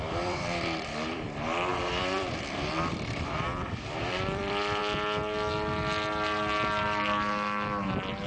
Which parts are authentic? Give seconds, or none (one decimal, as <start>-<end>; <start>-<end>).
4.8-8.3